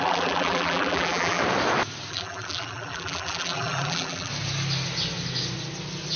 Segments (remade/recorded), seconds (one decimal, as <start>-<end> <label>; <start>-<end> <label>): 0.0-1.4 remade; 1.4-2.1 recorded; 2.1-4.3 remade; 4.3-6.2 recorded